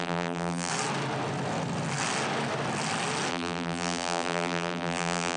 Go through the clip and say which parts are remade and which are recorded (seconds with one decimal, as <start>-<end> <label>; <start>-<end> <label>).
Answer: 0.0-0.7 remade; 0.7-3.3 recorded; 3.3-5.4 remade